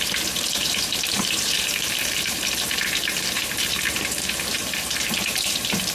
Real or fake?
fake